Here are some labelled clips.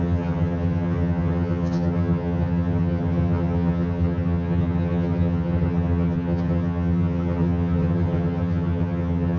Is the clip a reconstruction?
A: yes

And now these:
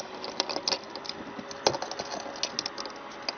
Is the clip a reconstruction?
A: no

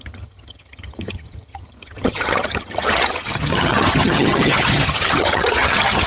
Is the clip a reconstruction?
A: yes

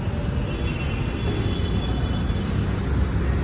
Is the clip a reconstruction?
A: no